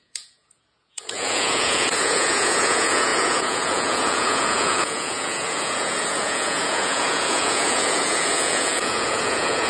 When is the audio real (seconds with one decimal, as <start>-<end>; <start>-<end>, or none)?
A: none